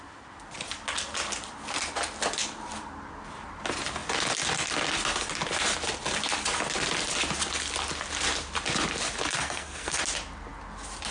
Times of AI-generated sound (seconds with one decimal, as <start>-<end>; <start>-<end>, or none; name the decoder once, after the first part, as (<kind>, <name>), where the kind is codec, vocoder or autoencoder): 9.4-10.0 (codec, SNAC)